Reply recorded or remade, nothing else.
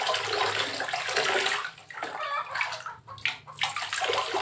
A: recorded